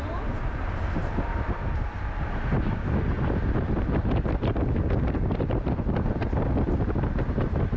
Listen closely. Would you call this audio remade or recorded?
recorded